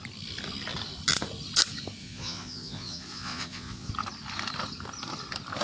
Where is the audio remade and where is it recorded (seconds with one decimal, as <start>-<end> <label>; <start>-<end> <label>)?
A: 0.0-2.0 recorded; 2.0-3.9 remade; 3.9-5.6 recorded